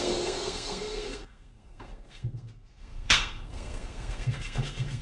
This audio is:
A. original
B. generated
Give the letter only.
B